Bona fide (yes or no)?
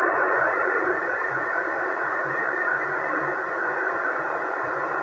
no